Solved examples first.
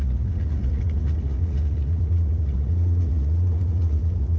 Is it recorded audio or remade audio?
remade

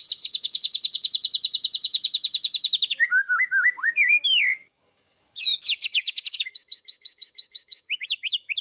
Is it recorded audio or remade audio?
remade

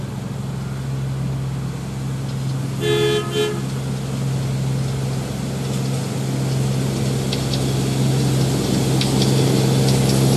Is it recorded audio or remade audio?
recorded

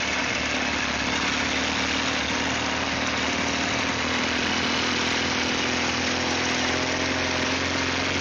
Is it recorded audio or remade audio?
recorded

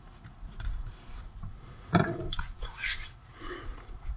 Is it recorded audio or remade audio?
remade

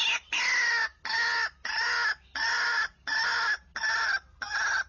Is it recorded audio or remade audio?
recorded